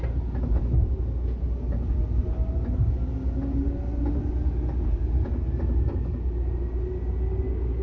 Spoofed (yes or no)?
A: no